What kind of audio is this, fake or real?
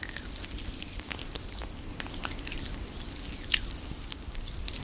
real